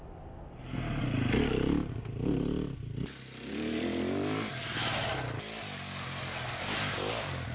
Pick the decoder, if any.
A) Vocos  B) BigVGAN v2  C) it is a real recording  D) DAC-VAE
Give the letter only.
C